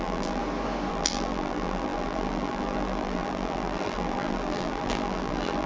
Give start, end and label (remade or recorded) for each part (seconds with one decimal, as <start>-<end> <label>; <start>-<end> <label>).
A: 0.0-0.4 remade; 0.4-0.9 recorded; 0.9-5.7 remade

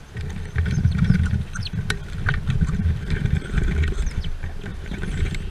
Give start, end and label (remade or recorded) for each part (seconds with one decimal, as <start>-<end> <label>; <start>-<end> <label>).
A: 0.0-4.7 recorded; 4.7-5.5 remade